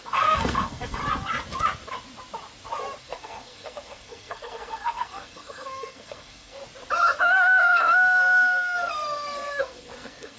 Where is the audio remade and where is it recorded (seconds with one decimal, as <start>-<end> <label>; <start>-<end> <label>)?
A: 0.0-1.0 remade; 1.0-3.0 recorded; 3.0-6.6 remade; 6.6-7.2 recorded; 7.2-10.4 remade